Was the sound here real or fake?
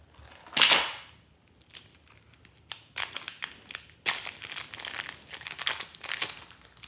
real